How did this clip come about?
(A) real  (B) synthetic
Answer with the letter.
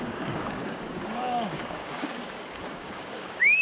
B